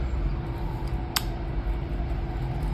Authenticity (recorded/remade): recorded